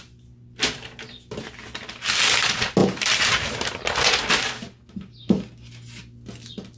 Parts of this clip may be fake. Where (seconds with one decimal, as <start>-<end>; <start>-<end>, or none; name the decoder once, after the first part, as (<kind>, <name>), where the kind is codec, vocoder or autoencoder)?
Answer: none

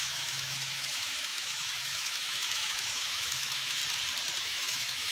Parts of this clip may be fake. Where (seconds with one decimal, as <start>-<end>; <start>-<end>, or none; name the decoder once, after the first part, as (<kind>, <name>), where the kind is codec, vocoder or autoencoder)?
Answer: 0.0-3.8 (autoencoder, DAC-VAE); 4.4-5.1

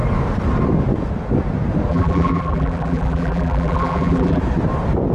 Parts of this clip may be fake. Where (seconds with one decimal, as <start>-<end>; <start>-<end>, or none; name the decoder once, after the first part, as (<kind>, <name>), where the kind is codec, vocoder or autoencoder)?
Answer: 1.9-4.4 (vocoder, BigVGAN v2)

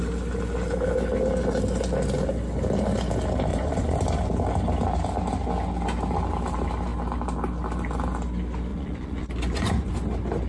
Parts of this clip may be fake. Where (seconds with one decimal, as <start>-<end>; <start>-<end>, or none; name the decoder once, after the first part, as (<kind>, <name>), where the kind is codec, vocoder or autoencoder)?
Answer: 3.5-4.0 (vocoder, Vocos); 8.7-9.9

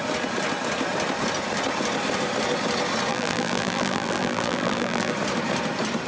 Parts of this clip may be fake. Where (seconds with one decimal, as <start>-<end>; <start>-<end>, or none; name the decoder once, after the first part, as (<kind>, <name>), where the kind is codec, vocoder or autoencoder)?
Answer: 3.1-5.1 (vocoder, BigVGAN v2)

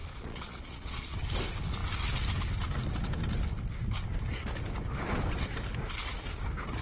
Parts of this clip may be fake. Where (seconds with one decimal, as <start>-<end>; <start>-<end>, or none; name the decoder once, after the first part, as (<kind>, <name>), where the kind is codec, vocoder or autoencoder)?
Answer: 0.0-1.2 (vocoder, Vocos)

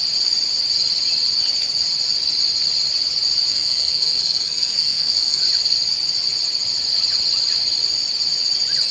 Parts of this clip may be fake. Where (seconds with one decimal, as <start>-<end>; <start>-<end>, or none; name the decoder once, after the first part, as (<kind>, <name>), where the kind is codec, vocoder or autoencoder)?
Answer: 3.5-5.4 (codec, SNAC)

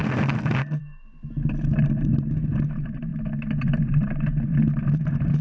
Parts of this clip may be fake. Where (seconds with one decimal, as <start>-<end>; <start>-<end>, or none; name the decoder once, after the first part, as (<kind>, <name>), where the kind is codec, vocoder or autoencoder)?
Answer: 0.8-3.1 (vocoder, BigVGAN v2); 3.6-5.4